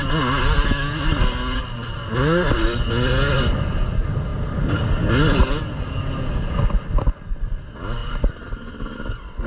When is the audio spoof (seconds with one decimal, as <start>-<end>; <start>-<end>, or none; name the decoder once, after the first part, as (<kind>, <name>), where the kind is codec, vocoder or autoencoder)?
8.0-9.0 (vocoder, BigVGAN v2)

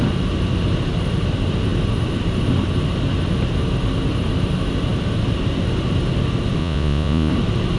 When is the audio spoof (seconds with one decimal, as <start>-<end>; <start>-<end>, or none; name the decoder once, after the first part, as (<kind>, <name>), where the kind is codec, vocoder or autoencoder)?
6.6-7.3 (vocoder, Vocos)

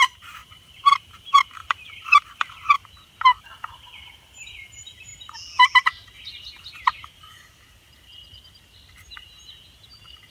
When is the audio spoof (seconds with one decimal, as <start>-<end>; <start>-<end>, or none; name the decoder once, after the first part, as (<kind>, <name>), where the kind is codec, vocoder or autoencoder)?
0.0-2.8 (vocoder, BigVGAN v2); 3.4-5.1

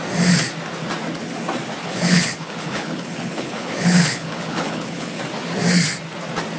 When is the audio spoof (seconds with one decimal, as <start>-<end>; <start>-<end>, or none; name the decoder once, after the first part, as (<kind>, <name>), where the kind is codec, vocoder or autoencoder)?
1.8-5.2 (codec, HILCodec)